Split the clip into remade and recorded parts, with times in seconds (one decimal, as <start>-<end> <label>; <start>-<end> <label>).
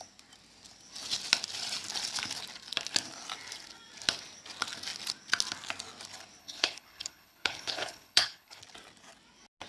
0.0-6.4 recorded; 6.4-8.6 remade; 8.6-9.7 recorded